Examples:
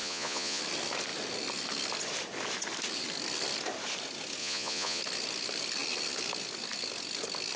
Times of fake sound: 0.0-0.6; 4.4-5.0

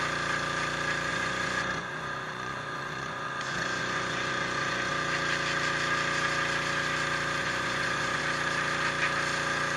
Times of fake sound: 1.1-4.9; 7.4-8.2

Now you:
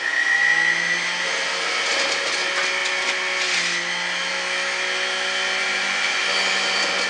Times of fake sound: 5.6-6.2

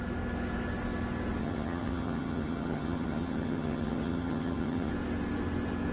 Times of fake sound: 1.4-4.9

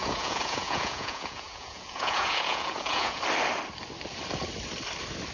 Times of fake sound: 0.0-3.2

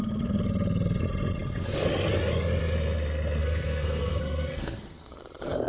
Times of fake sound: 3.4-5.2

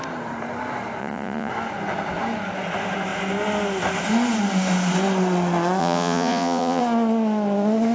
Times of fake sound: 1.0-1.5; 5.8-6.8